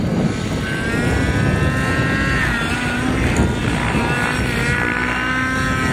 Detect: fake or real real